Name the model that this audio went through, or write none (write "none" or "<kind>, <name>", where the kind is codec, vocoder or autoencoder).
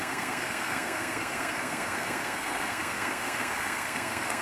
codec, SNAC